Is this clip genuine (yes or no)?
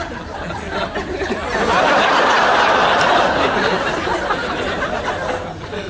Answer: yes